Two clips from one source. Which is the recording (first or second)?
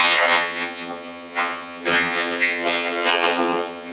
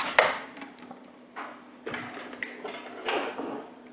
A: second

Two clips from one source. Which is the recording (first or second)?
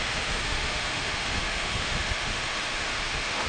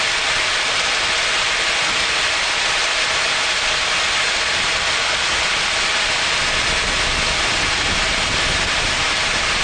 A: second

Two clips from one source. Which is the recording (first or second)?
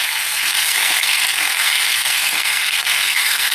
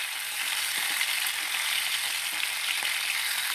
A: second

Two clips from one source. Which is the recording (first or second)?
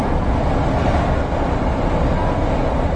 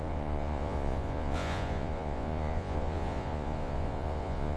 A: first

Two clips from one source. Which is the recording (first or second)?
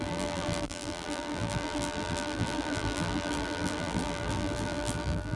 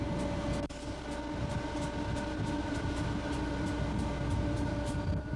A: second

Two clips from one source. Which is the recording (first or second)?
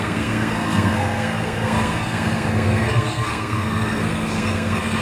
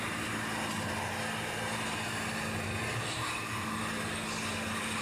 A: second